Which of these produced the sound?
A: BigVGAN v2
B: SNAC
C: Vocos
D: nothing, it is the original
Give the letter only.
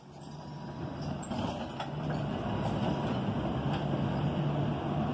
D